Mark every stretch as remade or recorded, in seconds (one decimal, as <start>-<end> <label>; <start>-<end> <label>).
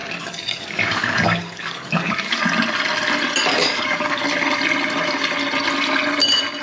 0.0-2.4 remade; 2.4-3.5 recorded; 3.5-4.2 remade; 4.2-6.6 recorded